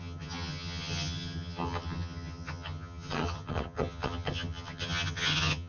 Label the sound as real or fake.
fake